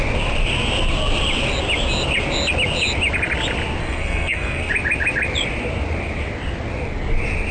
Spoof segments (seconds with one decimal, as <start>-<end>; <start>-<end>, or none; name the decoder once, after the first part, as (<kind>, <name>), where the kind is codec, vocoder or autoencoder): 3.8-4.7 (codec, SNAC)